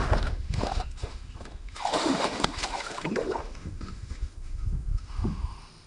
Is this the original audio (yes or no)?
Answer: no